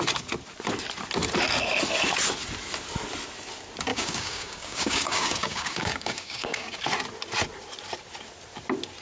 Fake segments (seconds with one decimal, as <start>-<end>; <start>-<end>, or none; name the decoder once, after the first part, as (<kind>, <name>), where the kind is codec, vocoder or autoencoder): 3.9-6.8 (codec, DAC)